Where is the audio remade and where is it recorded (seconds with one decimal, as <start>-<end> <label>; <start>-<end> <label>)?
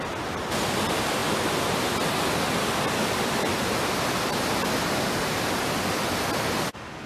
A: 0.0-7.1 recorded